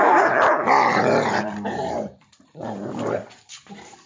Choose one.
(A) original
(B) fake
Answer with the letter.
B